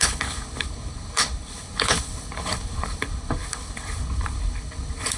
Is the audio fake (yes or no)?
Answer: yes